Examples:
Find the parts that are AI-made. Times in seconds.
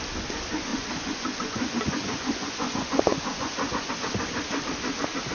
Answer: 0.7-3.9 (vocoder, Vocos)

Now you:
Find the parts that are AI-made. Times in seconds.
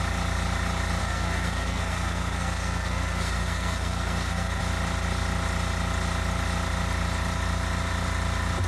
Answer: 1.0-4.6 (codec, SNAC)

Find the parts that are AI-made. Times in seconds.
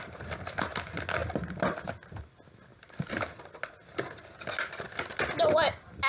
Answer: none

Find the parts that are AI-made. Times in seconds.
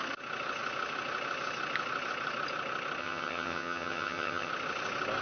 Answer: 3.0-4.5 (vocoder, HiFi-GAN)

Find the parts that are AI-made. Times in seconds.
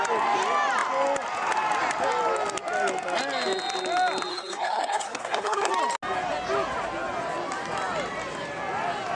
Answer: 4.3-5.7 (codec, SNAC)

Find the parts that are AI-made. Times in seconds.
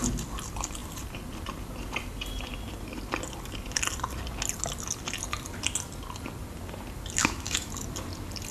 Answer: 7.2-7.7 (autoencoder, DAC-VAE)